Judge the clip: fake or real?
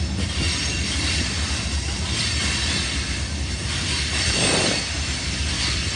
real